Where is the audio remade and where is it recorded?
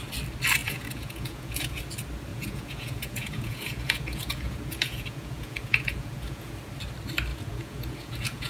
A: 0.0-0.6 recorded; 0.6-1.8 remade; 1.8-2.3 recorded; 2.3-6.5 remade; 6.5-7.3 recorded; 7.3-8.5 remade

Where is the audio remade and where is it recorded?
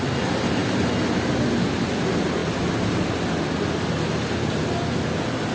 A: 0.0-5.5 recorded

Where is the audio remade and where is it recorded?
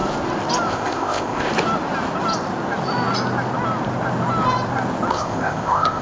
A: 0.0-0.7 recorded; 0.7-1.5 remade; 1.5-5.1 recorded; 5.1-6.0 remade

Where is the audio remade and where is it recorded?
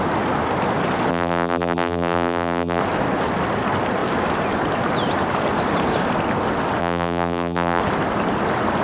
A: 0.0-1.1 recorded; 1.1-2.8 remade; 2.8-6.8 recorded; 6.8-7.8 remade; 7.8-8.8 recorded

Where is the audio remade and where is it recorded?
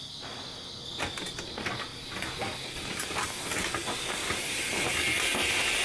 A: 0.0-1.9 recorded; 1.9-3.4 remade; 3.4-4.2 recorded; 4.2-5.0 remade; 5.0-5.8 recorded